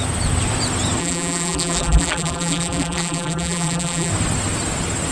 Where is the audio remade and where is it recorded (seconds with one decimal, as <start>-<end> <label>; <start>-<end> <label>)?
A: 0.0-1.0 recorded; 1.0-4.1 remade; 4.1-5.1 recorded